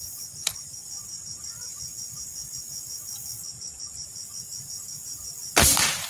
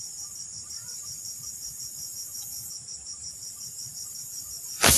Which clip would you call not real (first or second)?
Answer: second